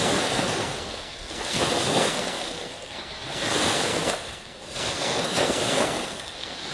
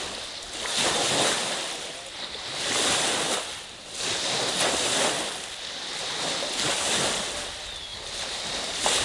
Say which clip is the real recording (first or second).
second